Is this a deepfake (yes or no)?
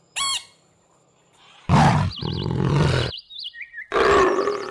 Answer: no